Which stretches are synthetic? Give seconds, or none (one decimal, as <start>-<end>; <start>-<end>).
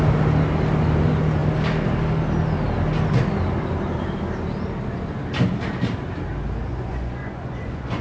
6.7-8.0